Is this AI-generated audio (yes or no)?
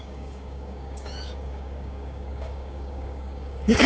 yes